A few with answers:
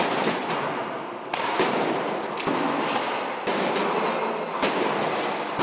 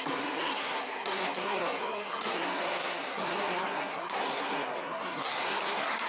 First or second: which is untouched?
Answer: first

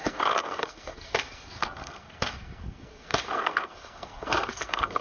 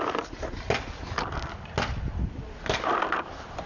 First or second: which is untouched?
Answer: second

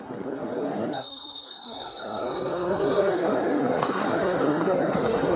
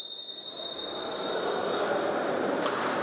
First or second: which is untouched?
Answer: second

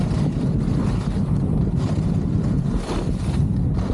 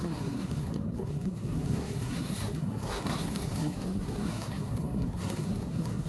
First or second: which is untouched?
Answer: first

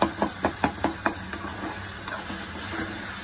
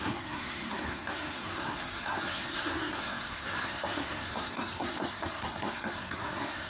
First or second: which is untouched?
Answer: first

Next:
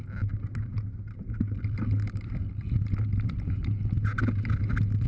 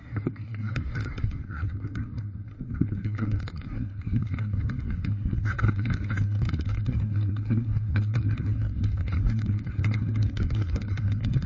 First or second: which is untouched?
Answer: first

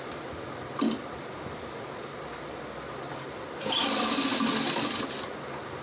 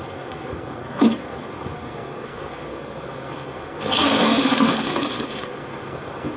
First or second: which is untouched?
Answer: first